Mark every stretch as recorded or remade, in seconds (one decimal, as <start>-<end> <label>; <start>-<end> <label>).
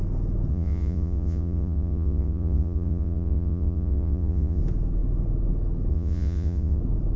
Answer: 0.0-0.5 recorded; 0.5-4.6 remade; 4.6-5.9 recorded; 5.9-6.8 remade; 6.8-7.2 recorded